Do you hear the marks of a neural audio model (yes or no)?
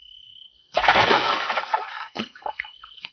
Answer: yes